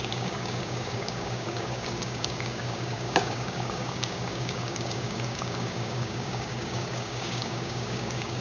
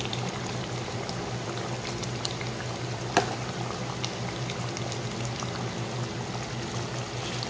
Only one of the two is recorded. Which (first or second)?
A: second